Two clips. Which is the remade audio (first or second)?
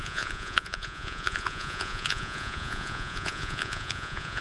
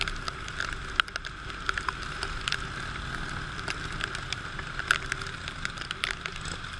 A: first